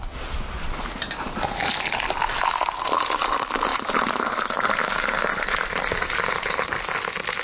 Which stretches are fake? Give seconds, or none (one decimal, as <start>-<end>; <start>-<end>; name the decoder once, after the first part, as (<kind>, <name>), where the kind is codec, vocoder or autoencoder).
3.7-6.6 (vocoder, BigVGAN v2)